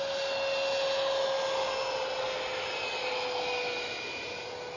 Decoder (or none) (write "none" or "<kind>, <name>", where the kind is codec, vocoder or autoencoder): none